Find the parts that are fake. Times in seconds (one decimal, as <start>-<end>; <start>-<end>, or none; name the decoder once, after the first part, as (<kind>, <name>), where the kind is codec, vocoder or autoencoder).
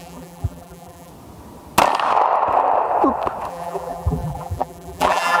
0.0-1.1 (vocoder, BigVGAN v2); 3.5-5.4